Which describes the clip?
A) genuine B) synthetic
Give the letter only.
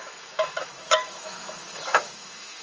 B